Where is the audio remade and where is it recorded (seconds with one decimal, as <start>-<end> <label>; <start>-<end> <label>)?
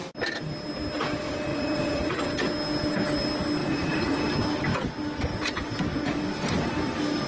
0.0-1.5 recorded; 1.5-2.2 remade; 2.2-3.6 recorded; 3.6-4.2 remade; 4.2-7.3 recorded